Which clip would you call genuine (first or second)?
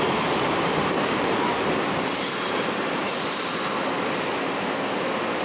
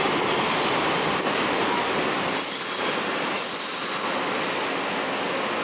second